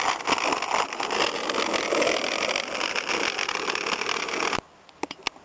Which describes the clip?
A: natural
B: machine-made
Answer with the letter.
A